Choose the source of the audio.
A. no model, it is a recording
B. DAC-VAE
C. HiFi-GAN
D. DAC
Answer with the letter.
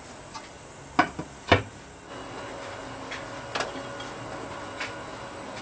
A